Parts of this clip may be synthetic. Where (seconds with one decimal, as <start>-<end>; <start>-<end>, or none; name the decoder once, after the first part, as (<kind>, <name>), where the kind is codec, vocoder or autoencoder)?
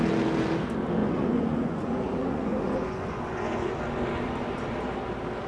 1.0-3.7 (vocoder, Vocos)